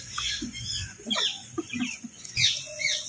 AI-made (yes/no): yes